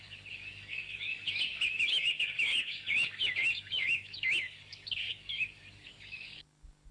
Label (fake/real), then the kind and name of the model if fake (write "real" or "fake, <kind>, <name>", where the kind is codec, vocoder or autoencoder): fake, codec, DAC